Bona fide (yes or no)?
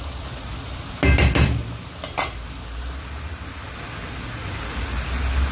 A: yes